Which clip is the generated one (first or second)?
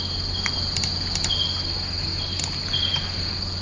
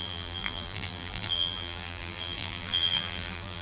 second